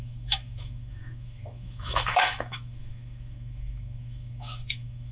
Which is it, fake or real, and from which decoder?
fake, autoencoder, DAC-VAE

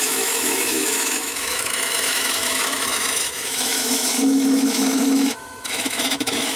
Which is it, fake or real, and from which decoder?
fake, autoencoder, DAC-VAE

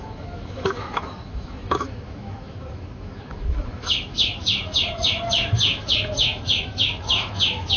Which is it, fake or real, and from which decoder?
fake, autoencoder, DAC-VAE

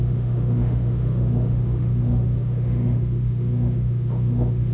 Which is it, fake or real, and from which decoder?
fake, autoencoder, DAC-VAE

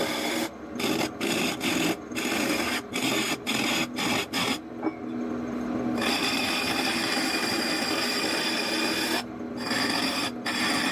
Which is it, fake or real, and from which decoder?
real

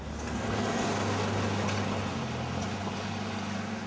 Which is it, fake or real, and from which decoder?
real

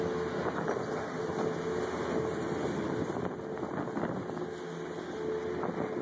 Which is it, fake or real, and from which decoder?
real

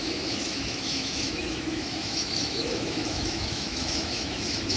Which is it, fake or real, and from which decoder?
fake, autoencoder, DAC-VAE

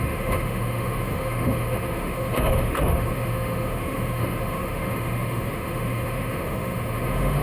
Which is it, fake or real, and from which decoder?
fake, autoencoder, DAC-VAE